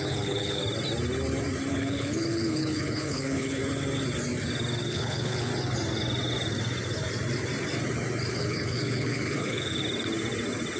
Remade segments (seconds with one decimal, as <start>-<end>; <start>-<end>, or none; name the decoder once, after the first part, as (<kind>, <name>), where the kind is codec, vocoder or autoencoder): 0.0-0.6 (codec, HILCodec); 1.7-3.6; 4.9-5.5; 8.3-9.8